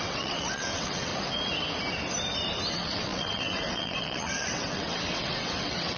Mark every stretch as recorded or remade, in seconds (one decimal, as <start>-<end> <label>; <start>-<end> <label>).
0.0-1.1 remade; 1.1-2.7 recorded; 2.7-6.0 remade